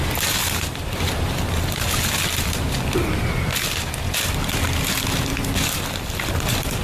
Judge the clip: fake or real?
real